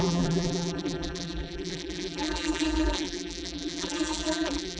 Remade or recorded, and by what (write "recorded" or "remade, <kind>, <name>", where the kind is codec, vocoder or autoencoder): remade, vocoder, BigVGAN v2